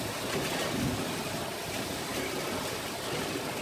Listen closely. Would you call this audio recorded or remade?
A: recorded